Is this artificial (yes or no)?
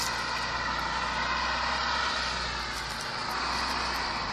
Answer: no